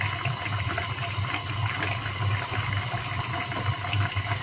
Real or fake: real